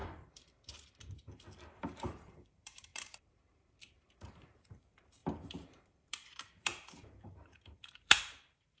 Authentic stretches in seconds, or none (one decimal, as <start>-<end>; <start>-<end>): none